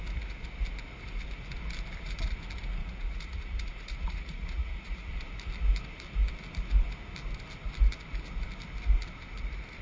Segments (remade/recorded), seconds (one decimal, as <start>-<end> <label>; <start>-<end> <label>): 0.0-2.8 recorded; 2.8-5.1 remade; 5.1-9.8 recorded